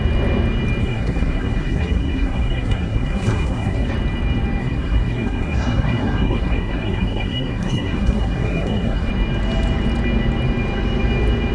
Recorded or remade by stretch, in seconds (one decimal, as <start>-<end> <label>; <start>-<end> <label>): 0.0-0.8 recorded; 0.8-3.9 remade; 3.9-4.6 recorded; 4.6-9.1 remade; 9.1-11.5 recorded